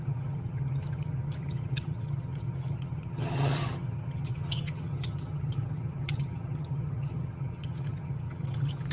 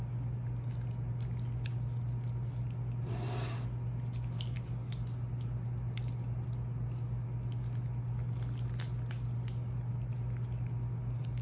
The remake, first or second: first